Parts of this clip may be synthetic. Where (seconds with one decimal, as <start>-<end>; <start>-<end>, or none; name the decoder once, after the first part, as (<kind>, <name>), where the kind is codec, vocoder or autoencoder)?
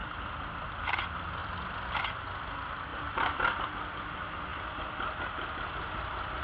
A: 0.0-0.7 (vocoder, BigVGAN v2); 1.4-2.0; 2.9-3.6